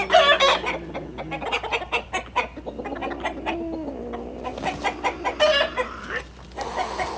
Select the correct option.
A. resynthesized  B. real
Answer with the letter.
B